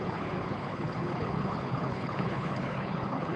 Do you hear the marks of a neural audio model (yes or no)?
yes